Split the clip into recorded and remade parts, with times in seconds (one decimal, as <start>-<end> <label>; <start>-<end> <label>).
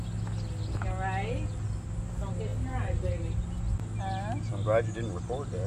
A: 0.0-5.7 recorded